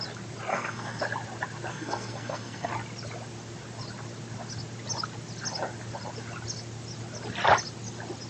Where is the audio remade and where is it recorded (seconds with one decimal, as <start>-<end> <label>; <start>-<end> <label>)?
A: 0.0-0.5 recorded; 0.5-1.0 remade; 1.0-1.7 recorded; 1.7-2.7 remade; 2.7-8.3 recorded